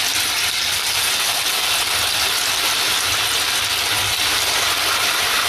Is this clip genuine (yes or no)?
yes